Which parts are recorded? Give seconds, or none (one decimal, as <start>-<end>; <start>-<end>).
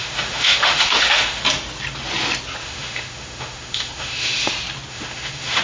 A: 1.4-2.6; 4.5-4.9